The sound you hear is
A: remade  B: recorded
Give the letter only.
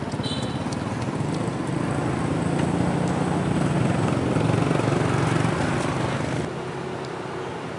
B